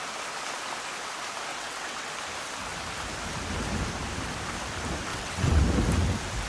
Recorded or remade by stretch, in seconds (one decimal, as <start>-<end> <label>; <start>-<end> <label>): 0.0-1.5 recorded; 1.5-2.1 remade; 2.1-5.1 recorded; 5.1-5.6 remade; 5.6-6.5 recorded